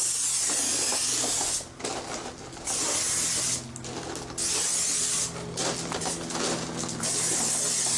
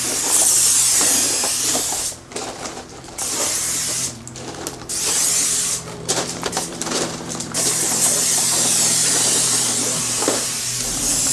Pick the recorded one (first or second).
first